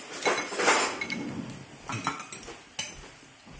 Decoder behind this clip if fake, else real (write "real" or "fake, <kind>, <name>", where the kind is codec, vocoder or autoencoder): real